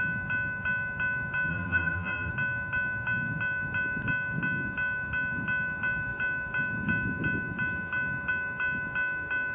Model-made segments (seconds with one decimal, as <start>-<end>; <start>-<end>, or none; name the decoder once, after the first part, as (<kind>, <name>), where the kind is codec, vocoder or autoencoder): 1.5-2.3 (vocoder, BigVGAN v2)